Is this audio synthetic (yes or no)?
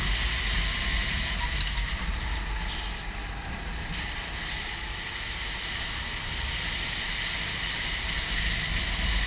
no